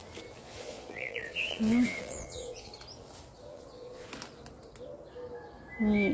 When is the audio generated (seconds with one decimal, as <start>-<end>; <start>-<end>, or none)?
0.4-2.7; 3.5-4.1